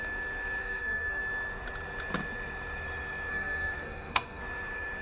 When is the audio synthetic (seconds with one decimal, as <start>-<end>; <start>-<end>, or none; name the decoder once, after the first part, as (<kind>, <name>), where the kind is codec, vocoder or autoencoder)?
0.6-1.2 (codec, SNAC); 3.3-4.4